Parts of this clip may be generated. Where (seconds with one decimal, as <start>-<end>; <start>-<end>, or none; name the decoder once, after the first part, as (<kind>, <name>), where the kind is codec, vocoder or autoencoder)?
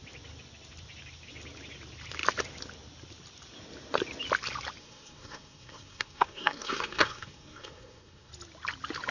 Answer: 4.8-8.3 (codec, SNAC)